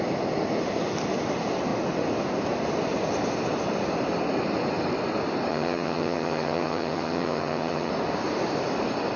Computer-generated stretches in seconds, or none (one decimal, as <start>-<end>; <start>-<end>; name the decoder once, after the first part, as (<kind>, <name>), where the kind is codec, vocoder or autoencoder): 5.5-7.9 (vocoder, HiFi-GAN)